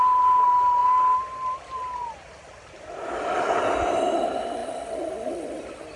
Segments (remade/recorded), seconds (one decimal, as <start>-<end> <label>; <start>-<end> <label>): 0.0-6.0 recorded